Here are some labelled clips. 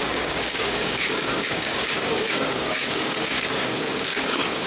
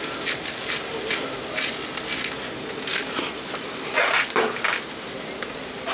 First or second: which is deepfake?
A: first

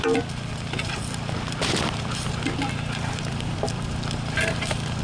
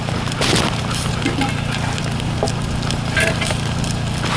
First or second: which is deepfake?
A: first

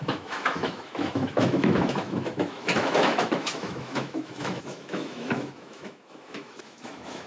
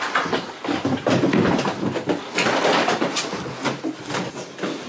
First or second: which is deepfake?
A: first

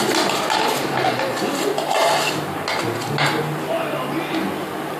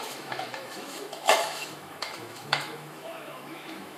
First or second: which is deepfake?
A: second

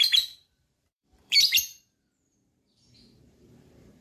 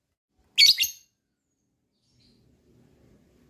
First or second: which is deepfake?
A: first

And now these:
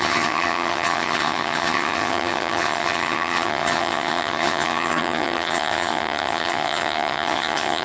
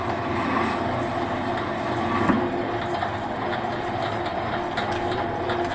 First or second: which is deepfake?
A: first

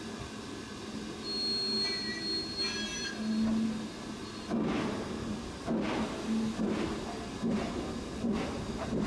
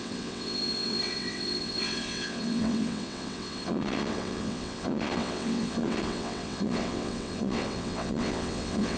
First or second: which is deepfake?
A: second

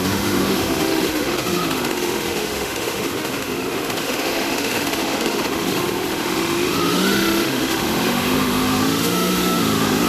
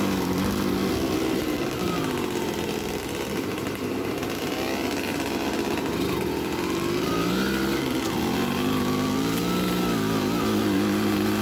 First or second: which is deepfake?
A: first